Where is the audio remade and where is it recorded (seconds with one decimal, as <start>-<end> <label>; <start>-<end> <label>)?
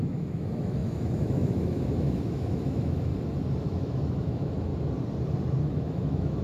0.0-3.1 remade; 3.1-3.6 recorded; 3.6-4.7 remade; 4.7-5.6 recorded; 5.6-6.4 remade